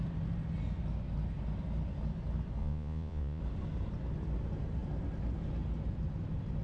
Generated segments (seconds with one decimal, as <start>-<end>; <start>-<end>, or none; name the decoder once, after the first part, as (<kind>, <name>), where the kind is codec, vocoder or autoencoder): 2.6-3.4 (vocoder, Vocos)